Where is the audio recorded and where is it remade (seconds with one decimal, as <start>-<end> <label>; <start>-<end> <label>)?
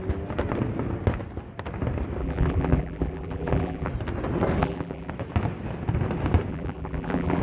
0.0-2.2 recorded; 2.2-3.9 remade; 3.9-4.6 recorded; 4.6-5.1 remade; 5.1-6.5 recorded; 6.5-7.4 remade